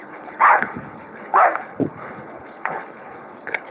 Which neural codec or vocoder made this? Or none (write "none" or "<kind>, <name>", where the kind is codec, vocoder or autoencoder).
codec, HILCodec